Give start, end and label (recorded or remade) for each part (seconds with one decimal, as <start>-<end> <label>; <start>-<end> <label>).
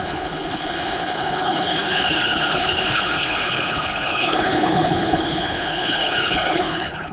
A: 0.0-7.1 remade